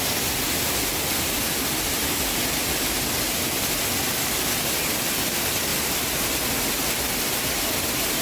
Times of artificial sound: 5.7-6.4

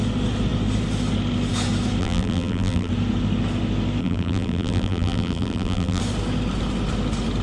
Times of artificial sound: 2.0-2.9; 4.0-6.0

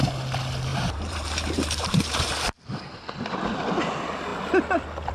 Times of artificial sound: 0.7-3.7

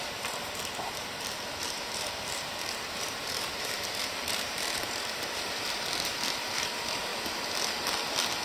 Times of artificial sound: 0.0-7.1

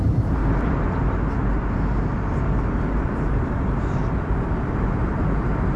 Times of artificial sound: 0.0-0.4; 1.7-5.8

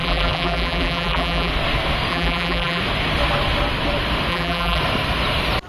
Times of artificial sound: 0.0-1.5; 2.1-2.8; 4.3-4.8

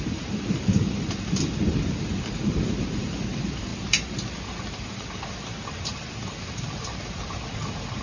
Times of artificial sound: 0.0-3.7; 4.4-8.0